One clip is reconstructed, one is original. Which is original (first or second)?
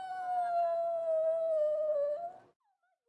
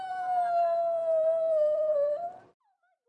first